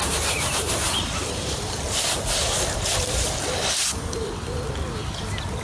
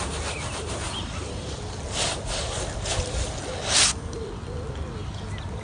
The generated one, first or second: first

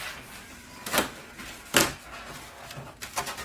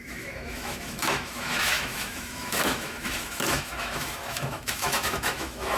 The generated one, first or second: second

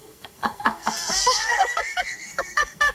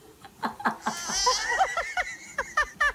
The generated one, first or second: first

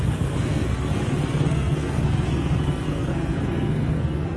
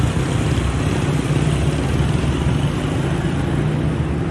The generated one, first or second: first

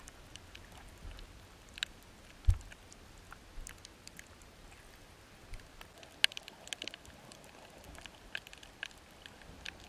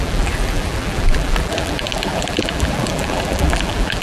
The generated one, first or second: second